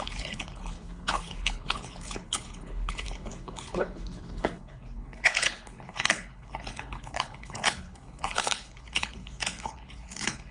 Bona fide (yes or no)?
no